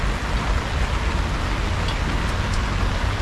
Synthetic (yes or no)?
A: no